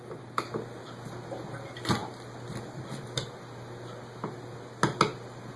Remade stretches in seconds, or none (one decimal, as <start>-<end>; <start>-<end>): none